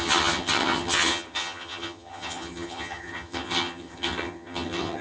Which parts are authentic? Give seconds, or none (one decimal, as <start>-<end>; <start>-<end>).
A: none